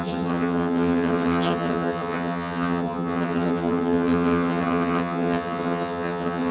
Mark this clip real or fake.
fake